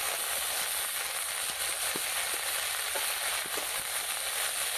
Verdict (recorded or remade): recorded